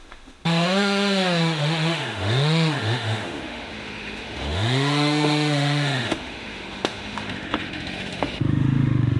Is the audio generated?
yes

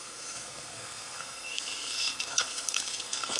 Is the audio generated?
yes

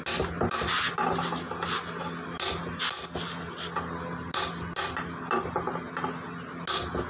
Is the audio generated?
no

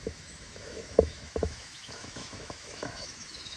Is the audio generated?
yes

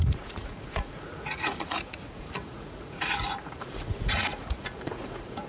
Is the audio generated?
yes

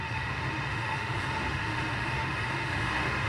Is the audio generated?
yes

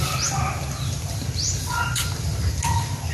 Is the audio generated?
no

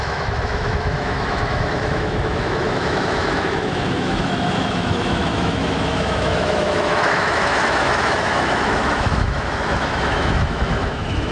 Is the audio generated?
yes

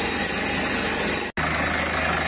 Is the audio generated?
no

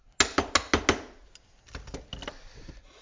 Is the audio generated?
no